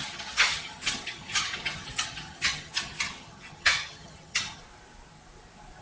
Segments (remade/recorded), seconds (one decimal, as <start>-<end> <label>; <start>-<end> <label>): 0.0-4.6 remade; 4.6-5.8 recorded